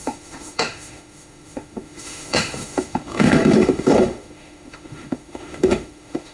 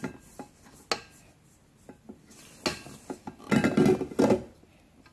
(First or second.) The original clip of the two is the second